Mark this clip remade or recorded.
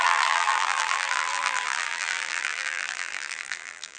remade